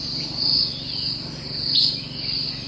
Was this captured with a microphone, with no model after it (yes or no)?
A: yes